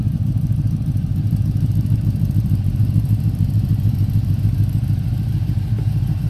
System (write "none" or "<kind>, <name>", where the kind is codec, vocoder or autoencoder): vocoder, BigVGAN v2